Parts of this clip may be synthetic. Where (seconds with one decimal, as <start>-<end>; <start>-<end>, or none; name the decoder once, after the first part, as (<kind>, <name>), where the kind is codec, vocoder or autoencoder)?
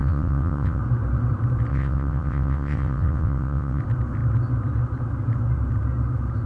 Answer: 0.0-0.8 (vocoder, WaveNeXt); 1.7-3.8